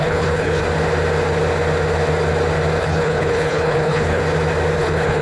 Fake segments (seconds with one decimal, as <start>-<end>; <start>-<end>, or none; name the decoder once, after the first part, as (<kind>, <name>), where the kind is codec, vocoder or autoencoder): 0.0-0.6 (codec, HILCodec); 2.8-4.2; 4.8-5.2